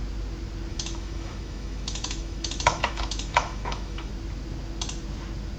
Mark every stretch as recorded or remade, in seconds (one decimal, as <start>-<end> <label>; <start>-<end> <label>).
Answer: 0.0-0.7 recorded; 0.7-4.1 remade; 4.1-5.6 recorded